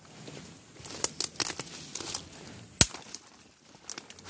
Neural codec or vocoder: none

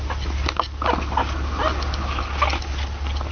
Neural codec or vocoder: none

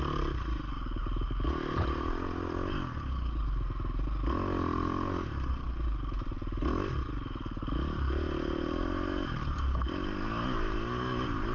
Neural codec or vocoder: none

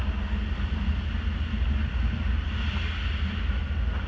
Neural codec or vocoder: none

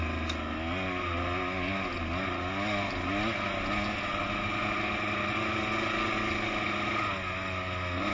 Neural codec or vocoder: none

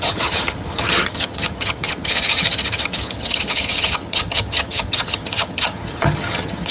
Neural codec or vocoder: vocoder, HiFi-GAN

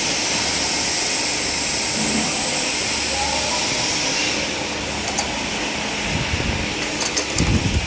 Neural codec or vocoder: none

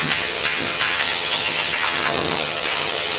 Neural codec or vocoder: vocoder, HiFi-GAN